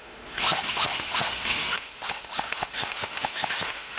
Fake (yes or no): yes